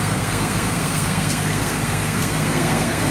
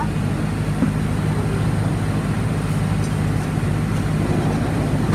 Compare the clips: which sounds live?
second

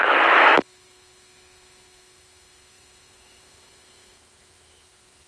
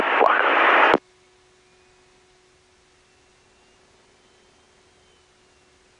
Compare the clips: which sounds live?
second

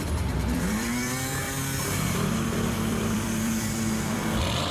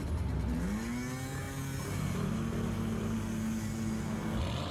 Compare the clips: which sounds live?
second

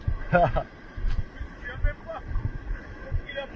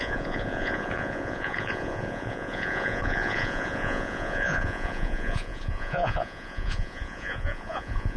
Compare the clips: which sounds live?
first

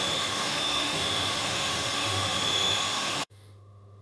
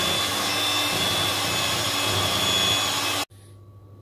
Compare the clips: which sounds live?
second